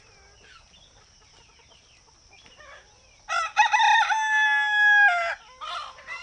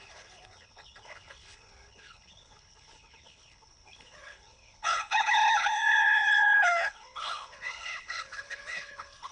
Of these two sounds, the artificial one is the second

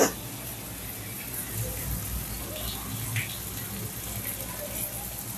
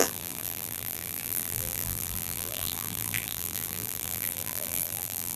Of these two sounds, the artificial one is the second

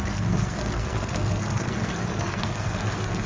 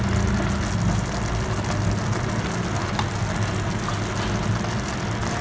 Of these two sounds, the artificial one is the first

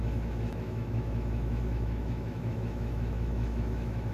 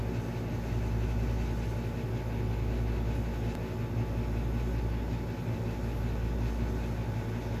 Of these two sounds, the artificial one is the first